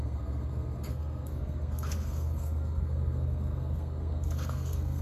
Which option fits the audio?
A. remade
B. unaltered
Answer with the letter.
A